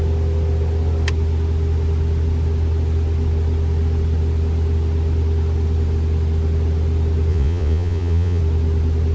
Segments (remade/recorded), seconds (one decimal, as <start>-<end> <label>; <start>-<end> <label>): 0.0-7.3 recorded; 7.3-8.4 remade; 8.4-9.1 recorded